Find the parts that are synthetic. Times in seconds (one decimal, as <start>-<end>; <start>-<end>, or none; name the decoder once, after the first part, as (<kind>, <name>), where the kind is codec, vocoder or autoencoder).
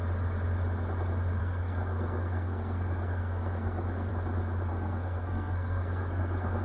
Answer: 1.4-4.1 (codec, SNAC); 4.7-6.6